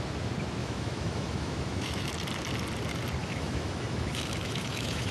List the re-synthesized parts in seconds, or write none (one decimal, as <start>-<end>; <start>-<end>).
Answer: 0.6-2.1; 3.2-5.1